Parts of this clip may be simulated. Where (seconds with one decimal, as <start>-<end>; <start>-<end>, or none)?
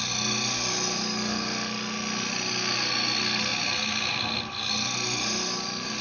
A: none